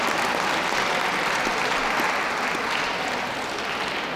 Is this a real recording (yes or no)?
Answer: yes